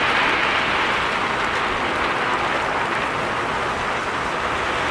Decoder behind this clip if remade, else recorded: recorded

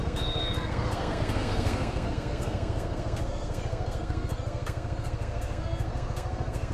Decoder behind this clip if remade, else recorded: remade, codec, SNAC